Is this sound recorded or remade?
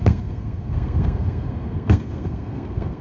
remade